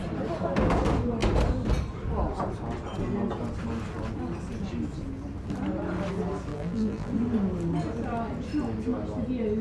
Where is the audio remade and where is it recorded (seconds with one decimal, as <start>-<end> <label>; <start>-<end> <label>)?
0.0-6.5 recorded; 6.5-7.1 remade; 7.1-9.6 recorded